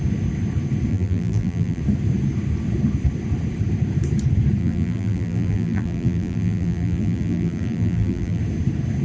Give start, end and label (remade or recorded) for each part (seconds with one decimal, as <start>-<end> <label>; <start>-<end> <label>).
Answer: 0.0-0.9 recorded; 0.9-1.8 remade; 1.8-4.6 recorded; 4.6-8.4 remade; 8.4-9.0 recorded